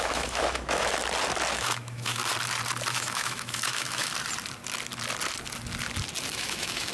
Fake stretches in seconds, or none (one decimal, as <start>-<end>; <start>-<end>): 0.0-1.0; 1.5-2.2; 2.9-4.1; 6.3-6.9